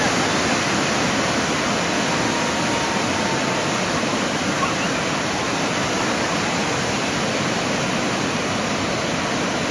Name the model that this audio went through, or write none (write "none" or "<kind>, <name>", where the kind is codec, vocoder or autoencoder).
none